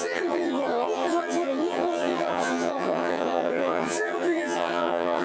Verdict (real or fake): fake